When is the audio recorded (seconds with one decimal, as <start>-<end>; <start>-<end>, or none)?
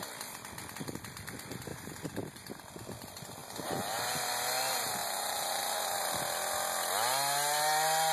0.0-1.7; 2.5-3.4; 4.3-5.0; 5.6-8.1